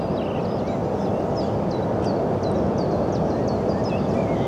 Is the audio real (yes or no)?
yes